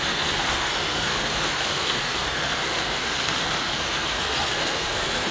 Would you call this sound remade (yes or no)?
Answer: yes